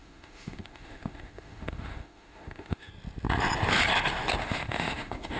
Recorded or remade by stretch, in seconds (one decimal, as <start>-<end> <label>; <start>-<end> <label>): 0.0-2.9 remade; 2.9-4.4 recorded; 4.4-5.4 remade